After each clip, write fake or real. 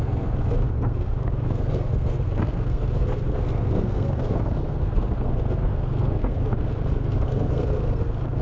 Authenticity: fake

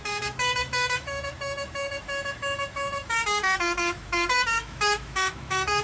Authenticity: fake